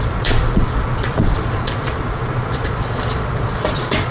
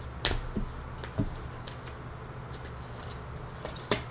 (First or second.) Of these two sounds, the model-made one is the first